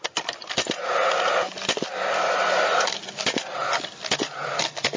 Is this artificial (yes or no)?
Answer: no